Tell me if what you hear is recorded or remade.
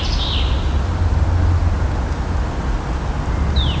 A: recorded